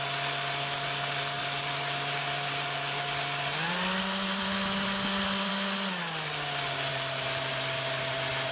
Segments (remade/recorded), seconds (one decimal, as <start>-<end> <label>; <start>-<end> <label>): 0.0-1.4 recorded; 1.4-5.5 remade; 5.5-6.9 recorded; 6.9-8.1 remade; 8.1-8.5 recorded